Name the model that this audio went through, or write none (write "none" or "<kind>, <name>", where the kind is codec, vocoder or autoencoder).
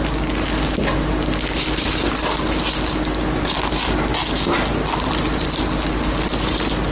none